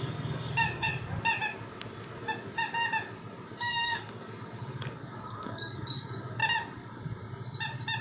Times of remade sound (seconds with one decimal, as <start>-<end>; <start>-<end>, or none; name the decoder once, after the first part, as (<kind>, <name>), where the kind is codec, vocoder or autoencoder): 0.0-0.9 (codec, DAC); 3.6-6.4